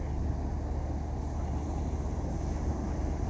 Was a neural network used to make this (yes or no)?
no